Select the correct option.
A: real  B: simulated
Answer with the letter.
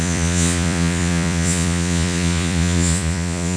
B